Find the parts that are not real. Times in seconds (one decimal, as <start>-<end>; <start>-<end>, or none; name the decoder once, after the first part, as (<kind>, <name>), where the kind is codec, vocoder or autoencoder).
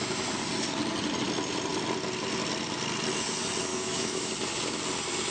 3.7-4.3 (autoencoder, DAC-VAE)